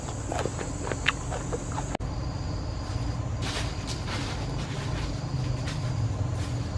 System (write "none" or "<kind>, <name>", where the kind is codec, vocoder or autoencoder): none